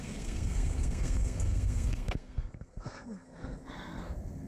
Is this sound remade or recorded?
remade